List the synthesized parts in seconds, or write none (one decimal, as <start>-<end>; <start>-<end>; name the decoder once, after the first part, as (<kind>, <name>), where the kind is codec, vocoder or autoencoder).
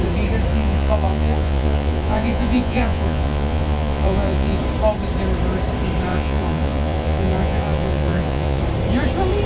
0.5-4.6 (vocoder, Vocos); 6.1-8.6